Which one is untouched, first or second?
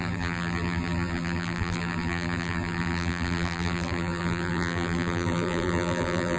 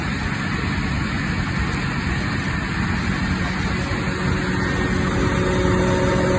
second